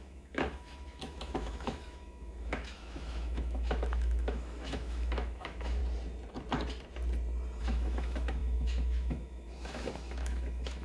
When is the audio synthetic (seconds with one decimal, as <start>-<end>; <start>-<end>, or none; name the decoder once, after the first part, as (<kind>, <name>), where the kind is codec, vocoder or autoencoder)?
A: 0.0-5.8 (autoencoder, DAC-VAE); 7.6-10.8